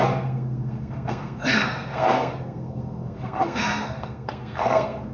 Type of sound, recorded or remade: remade